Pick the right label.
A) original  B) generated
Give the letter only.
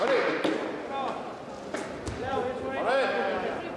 A